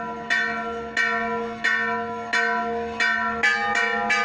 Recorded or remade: recorded